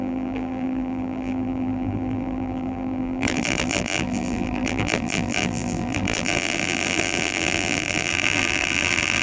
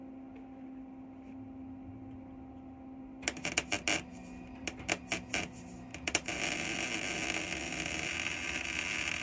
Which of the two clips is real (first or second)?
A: second